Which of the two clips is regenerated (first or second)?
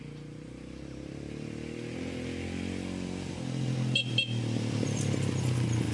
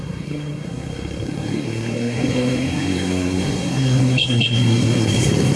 second